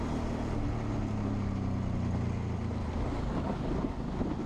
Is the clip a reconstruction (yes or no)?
no